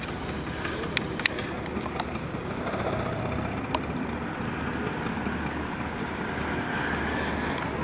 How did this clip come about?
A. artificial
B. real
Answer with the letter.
B